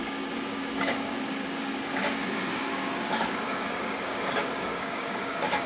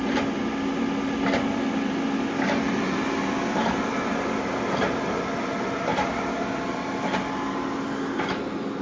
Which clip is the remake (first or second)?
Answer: first